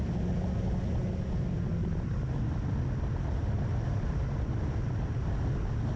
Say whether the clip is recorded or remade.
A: recorded